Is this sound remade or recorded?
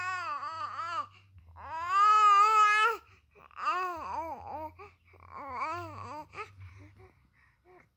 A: recorded